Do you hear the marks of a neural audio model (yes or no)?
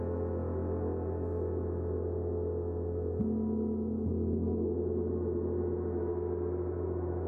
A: no